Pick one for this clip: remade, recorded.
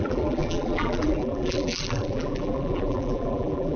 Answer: remade